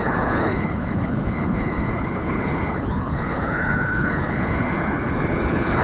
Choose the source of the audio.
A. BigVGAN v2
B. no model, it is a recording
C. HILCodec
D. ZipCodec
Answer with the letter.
C